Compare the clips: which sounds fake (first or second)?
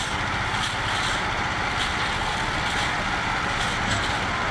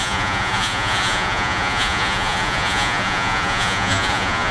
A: second